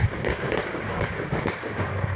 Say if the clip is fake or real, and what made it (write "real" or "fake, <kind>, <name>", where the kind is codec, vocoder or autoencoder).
fake, codec, DAC